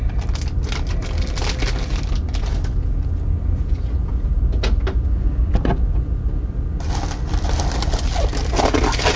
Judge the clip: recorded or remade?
recorded